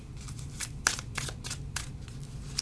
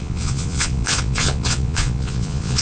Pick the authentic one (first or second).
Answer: first